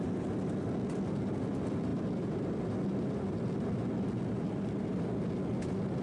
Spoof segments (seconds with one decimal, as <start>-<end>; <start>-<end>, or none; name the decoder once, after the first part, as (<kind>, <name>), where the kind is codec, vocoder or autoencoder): none